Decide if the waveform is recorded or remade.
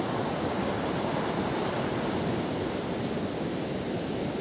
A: recorded